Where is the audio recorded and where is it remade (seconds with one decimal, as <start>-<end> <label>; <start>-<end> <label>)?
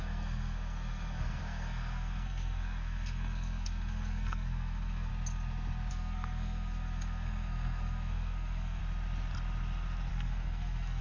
0.0-5.1 remade; 5.1-5.9 recorded; 5.9-8.8 remade; 8.8-10.1 recorded; 10.1-11.0 remade